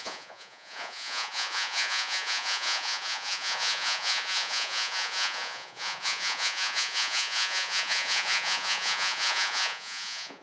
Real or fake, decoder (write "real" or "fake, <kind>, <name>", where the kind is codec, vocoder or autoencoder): fake, vocoder, Vocos